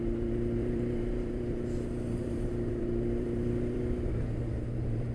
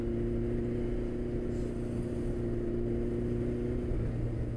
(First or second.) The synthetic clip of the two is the first